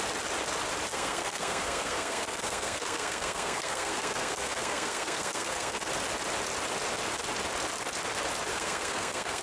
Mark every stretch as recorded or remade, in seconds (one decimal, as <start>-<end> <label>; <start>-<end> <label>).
0.0-0.9 recorded; 0.9-5.9 remade; 5.9-8.5 recorded; 8.5-9.4 remade